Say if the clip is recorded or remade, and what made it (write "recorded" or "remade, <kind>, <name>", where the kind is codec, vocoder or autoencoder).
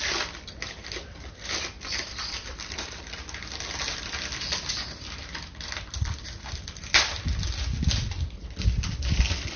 recorded